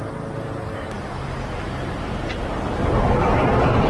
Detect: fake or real real